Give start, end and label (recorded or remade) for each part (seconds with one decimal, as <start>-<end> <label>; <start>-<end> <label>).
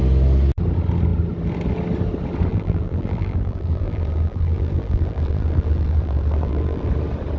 0.0-2.5 recorded; 2.5-6.9 remade; 6.9-7.4 recorded